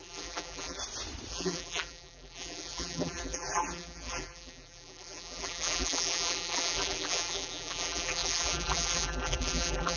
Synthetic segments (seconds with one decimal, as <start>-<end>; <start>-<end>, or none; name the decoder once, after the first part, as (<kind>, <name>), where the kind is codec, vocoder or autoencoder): 0.0-0.8 (vocoder, BigVGAN v2); 1.3-10.0